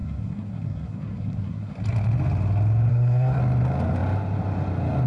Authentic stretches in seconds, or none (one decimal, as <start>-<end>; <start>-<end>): 1.8-2.9; 3.4-5.1